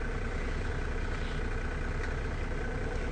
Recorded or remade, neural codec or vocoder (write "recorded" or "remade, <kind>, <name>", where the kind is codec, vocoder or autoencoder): recorded